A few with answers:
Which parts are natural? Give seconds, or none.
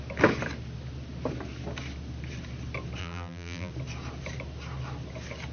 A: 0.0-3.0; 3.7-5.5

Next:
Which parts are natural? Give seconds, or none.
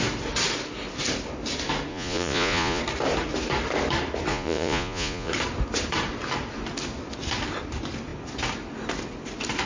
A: 0.0-1.9; 2.8-4.3; 5.3-9.7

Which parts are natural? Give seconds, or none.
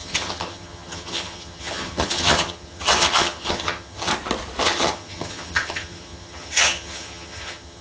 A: 4.1-4.6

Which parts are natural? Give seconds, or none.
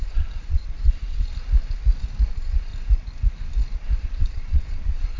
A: 1.3-2.3; 2.7-4.0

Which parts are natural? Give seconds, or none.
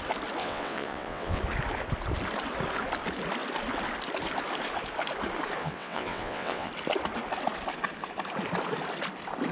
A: 0.0-0.4; 1.4-5.6; 6.7-9.5